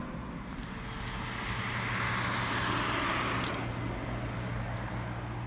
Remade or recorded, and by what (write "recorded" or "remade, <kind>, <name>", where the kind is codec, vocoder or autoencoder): recorded